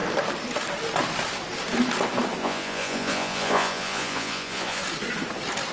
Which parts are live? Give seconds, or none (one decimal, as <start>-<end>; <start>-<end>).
0.0-2.4; 4.8-5.7